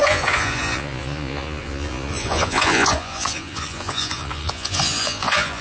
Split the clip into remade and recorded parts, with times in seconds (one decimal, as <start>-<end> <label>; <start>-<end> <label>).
0.0-5.6 remade